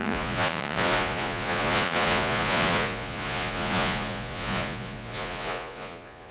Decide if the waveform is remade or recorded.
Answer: remade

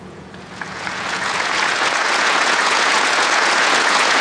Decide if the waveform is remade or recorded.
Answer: remade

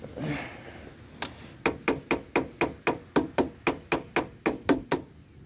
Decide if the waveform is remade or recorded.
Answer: recorded